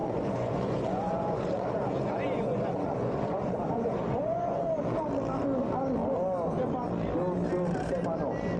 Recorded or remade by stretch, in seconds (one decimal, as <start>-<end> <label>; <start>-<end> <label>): 0.0-4.7 remade; 4.7-8.6 recorded